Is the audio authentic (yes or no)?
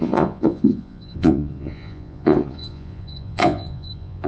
no